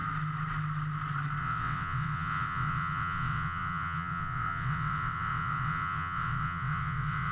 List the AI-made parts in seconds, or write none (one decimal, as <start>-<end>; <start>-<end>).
1.4-7.3